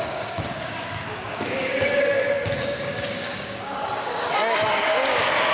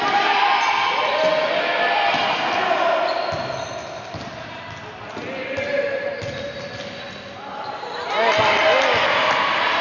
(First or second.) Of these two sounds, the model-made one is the first